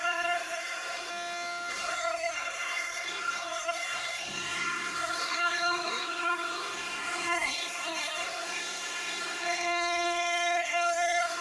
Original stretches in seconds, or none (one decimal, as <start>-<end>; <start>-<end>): 1.1-1.7